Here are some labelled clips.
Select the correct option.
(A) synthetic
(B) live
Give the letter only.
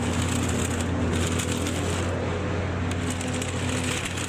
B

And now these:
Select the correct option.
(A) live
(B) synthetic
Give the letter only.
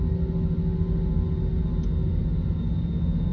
A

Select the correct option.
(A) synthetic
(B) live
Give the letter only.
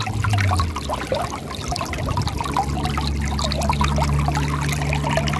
B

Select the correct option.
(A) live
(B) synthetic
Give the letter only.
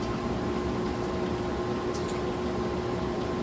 A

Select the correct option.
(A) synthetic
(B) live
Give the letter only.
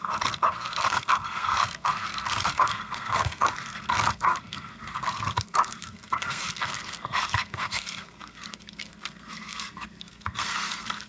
A